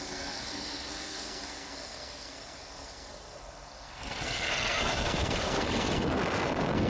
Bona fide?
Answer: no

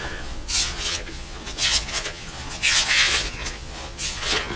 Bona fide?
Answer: no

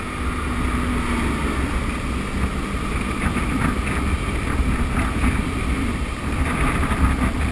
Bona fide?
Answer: yes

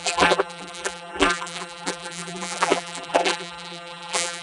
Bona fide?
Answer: no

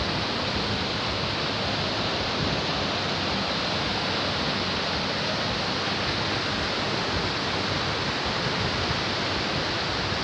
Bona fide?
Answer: yes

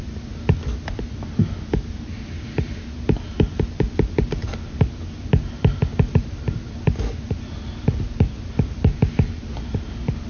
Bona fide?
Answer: yes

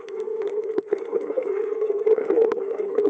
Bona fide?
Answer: no